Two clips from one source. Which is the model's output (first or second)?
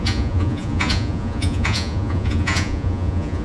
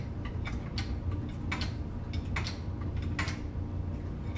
first